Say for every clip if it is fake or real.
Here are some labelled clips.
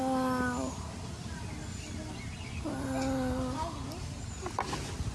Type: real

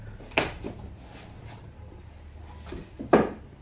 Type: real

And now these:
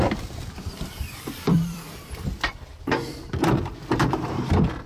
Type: fake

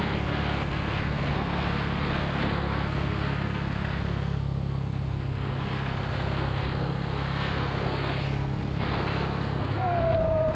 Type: fake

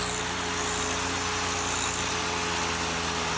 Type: real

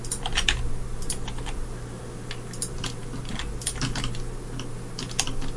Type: real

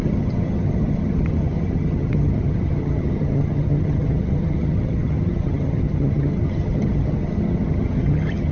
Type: fake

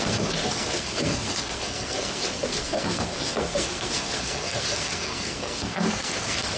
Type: fake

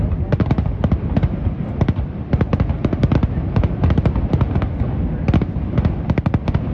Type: real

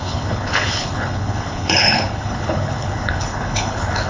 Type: fake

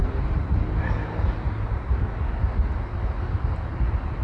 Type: real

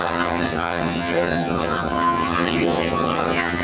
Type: fake